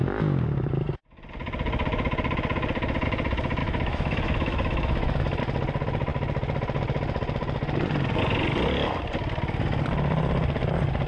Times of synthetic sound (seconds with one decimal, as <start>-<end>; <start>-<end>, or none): 3.6-5.4